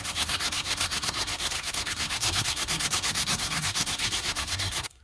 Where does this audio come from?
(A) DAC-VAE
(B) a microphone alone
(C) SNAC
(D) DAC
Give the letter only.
C